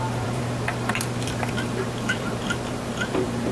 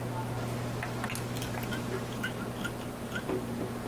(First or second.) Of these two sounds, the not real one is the first